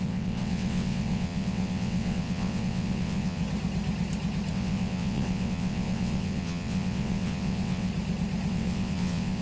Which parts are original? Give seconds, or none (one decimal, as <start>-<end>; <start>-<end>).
3.4-4.5; 7.9-8.5